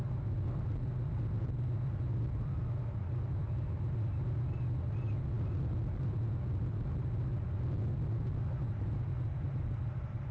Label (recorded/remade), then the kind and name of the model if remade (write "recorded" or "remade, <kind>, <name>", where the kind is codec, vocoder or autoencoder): recorded